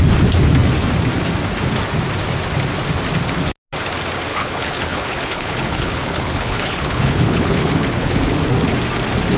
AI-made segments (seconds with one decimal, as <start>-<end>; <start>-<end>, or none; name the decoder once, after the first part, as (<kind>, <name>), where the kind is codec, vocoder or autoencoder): 4.3-8.2 (codec, HILCodec)